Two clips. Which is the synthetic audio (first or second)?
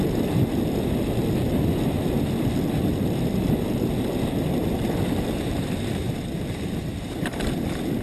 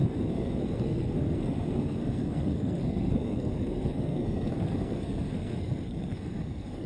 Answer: second